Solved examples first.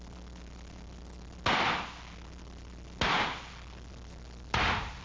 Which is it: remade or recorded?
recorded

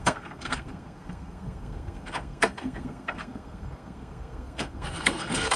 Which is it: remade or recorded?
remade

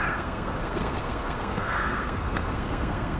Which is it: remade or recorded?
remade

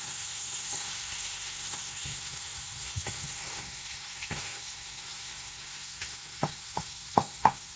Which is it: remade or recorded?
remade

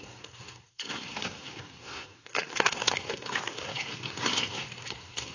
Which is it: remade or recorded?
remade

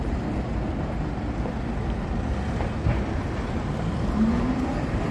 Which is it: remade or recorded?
recorded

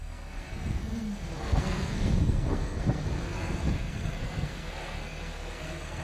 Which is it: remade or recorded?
remade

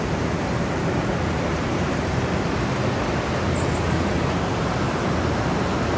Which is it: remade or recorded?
recorded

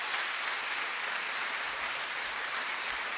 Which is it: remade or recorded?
recorded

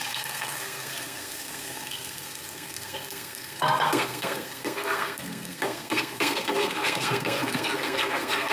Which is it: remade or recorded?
remade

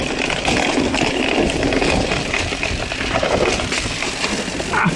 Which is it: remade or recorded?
recorded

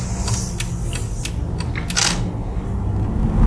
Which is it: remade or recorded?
recorded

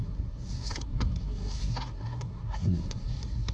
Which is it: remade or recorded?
remade